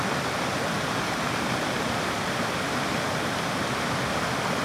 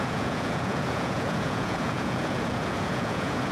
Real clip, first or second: first